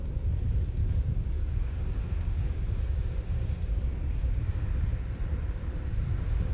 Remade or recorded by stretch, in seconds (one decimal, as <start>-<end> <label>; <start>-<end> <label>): 0.0-0.8 recorded; 0.8-4.7 remade; 4.7-6.5 recorded